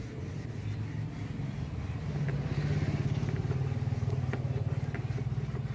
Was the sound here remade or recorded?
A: recorded